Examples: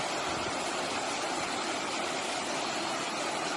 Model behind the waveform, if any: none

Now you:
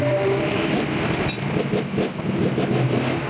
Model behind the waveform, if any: none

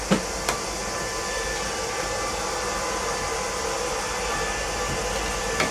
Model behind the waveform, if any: none